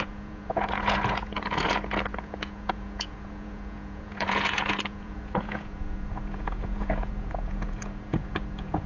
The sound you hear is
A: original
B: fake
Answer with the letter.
B